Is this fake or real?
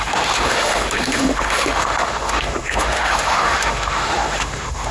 fake